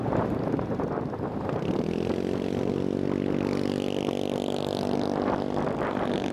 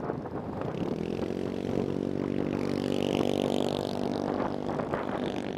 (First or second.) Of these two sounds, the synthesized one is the second